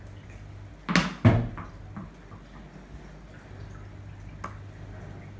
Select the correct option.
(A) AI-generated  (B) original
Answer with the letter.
B